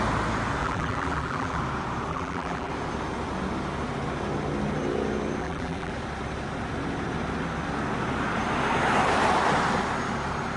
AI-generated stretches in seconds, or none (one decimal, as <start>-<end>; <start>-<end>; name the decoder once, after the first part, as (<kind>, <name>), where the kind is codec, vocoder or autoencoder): 0.6-1.6 (vocoder, BigVGAN v2); 2.1-2.7; 5.4-5.9